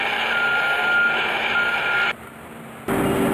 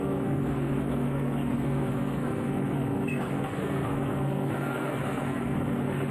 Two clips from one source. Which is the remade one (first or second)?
second